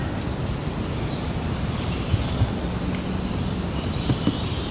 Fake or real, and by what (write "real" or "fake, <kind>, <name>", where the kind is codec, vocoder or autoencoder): real